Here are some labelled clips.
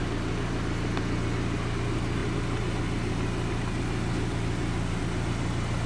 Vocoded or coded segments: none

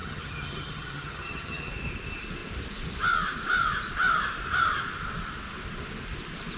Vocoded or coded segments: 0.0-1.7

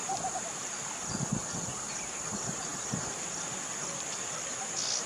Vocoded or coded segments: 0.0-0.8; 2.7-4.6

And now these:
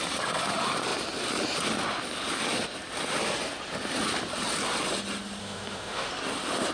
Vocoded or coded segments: 5.4-6.1